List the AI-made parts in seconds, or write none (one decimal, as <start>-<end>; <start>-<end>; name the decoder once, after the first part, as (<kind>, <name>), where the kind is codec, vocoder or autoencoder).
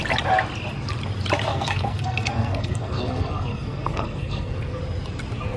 1.5-4.8 (codec, SNAC)